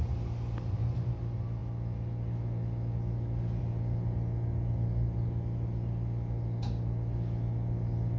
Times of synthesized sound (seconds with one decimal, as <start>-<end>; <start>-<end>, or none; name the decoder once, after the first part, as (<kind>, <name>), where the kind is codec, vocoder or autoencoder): none